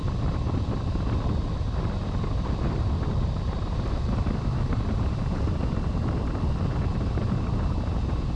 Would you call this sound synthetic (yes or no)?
no